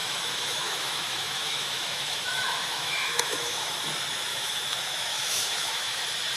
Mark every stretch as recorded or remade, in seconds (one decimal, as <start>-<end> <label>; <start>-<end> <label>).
0.0-3.8 remade; 3.8-4.3 recorded; 4.3-6.0 remade; 6.0-6.4 recorded